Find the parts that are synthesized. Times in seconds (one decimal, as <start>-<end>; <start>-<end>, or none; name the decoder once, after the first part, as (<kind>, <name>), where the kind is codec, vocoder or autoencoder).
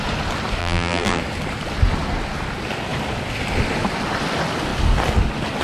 0.6-1.2 (vocoder, BigVGAN v2)